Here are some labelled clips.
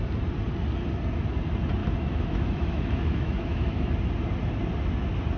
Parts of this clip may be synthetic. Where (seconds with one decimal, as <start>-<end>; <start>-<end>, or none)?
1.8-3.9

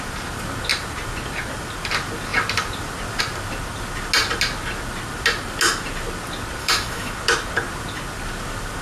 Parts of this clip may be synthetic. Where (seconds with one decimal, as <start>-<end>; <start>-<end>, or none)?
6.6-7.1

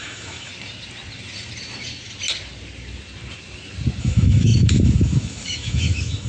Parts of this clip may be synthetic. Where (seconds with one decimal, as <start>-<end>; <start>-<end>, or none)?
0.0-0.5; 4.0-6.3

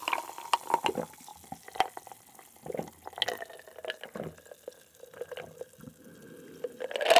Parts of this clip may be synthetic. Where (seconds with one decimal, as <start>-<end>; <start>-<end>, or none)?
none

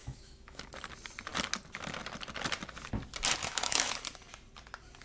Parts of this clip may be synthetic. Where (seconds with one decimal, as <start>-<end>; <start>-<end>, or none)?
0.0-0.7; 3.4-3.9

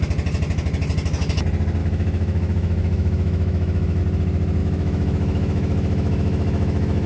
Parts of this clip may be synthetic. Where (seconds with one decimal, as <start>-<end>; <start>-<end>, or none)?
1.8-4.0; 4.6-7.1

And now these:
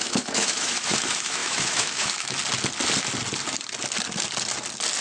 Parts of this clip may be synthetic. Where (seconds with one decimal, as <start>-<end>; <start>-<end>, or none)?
0.0-2.4